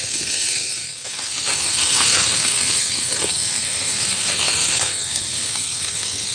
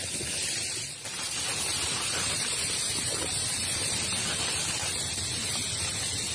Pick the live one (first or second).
second